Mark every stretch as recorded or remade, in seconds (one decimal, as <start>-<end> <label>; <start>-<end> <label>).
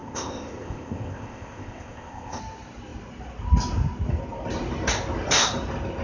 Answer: 0.0-2.4 remade; 2.4-6.0 recorded